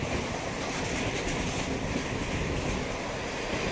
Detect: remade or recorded recorded